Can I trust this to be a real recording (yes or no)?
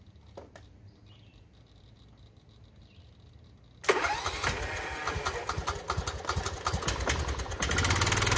yes